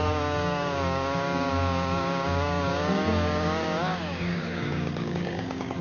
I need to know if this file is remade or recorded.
remade